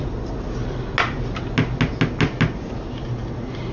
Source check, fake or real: real